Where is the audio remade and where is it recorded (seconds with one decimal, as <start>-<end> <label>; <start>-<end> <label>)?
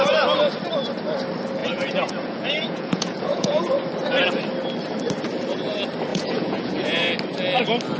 0.0-1.6 recorded; 1.6-3.7 remade; 3.7-6.1 recorded; 6.1-7.1 remade; 7.1-8.0 recorded